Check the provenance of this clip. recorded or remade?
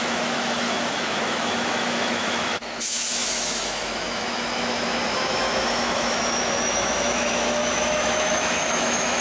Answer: remade